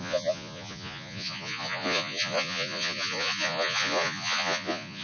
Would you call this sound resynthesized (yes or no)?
yes